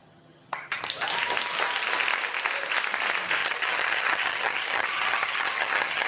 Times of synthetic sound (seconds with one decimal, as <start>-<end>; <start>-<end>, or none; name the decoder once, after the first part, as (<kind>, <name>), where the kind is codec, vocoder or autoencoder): 0.0-0.8 (vocoder, HiFi-GAN); 3.4-6.1